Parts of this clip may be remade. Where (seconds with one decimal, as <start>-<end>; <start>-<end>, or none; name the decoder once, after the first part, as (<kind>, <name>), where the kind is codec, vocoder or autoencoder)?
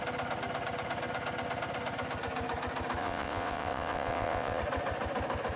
3.0-4.6 (vocoder, WaveNeXt)